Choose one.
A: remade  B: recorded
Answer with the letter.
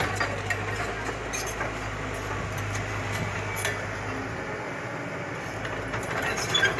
B